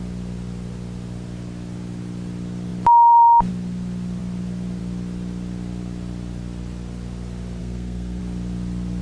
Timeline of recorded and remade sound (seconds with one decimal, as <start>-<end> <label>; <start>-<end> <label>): 0.0-7.6 recorded; 7.6-8.2 remade; 8.2-9.0 recorded